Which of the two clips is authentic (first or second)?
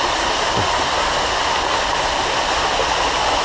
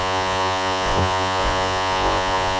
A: first